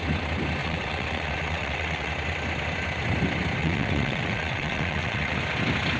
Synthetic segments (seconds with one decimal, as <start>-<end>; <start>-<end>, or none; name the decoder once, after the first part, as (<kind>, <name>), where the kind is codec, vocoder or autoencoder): 0.6-2.1 (vocoder, WaveNeXt); 3.6-5.4